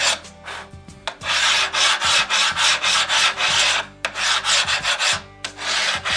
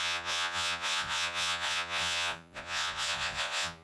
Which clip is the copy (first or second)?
second